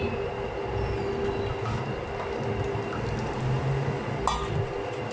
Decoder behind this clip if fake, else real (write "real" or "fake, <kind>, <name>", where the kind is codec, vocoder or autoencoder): real